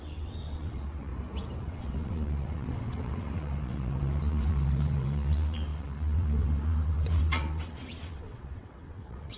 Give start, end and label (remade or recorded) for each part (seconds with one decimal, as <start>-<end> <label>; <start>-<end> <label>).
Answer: 0.0-1.1 remade; 1.1-1.6 recorded; 1.6-9.4 remade